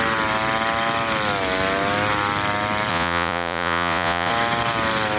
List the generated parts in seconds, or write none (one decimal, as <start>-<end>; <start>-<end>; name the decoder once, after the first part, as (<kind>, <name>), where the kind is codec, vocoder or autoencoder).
2.9-4.3 (vocoder, Vocos)